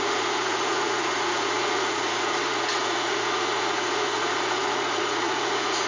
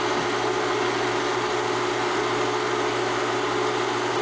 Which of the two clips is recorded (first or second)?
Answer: second